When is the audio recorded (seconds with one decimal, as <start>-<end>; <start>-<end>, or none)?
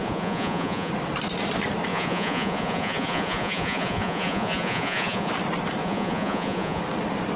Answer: 0.9-1.9; 5.3-5.8; 6.8-7.4